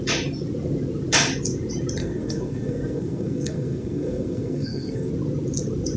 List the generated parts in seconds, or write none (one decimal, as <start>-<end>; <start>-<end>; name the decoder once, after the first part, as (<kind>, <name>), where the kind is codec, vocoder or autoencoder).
2.0-5.1 (codec, SNAC)